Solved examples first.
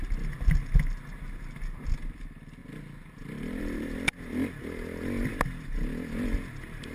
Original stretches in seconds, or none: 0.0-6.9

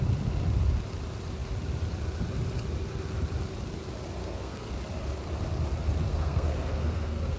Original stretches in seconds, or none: 0.0-4.2; 4.7-6.1

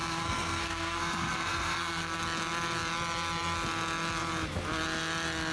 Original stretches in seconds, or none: 2.2-5.5

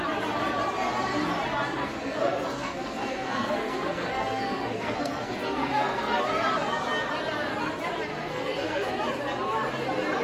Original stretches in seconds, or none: 0.0-1.8; 6.2-8.1; 8.9-10.2

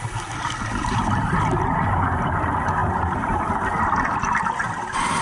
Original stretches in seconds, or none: 0.0-5.2

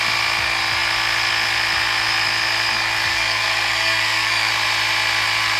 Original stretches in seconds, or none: 0.0-3.1; 4.5-5.6

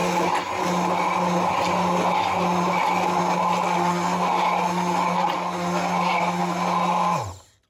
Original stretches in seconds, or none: 0.0-7.7